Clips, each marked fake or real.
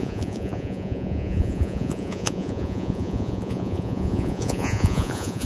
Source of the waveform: fake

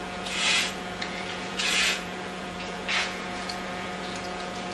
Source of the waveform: fake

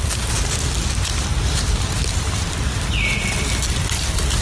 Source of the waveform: real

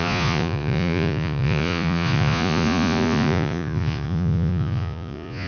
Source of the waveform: fake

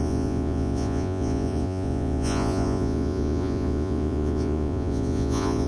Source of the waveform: fake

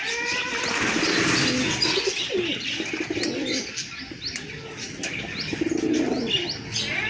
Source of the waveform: real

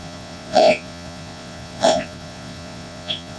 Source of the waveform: fake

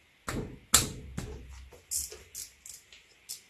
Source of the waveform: real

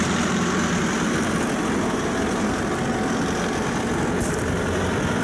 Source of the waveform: real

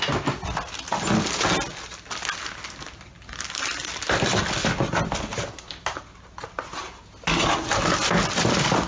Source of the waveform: real